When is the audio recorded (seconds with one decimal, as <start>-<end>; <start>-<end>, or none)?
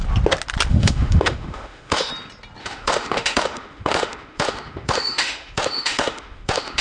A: 0.0-0.7; 2.1-2.6